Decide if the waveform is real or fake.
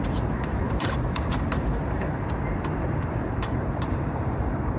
fake